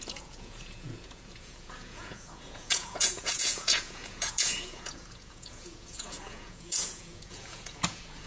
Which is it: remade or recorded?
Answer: remade